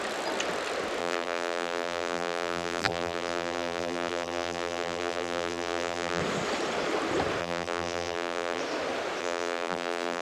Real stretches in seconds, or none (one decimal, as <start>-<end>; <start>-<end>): 0.0-1.0; 6.2-7.4; 8.6-9.2